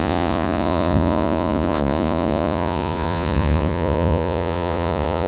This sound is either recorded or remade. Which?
remade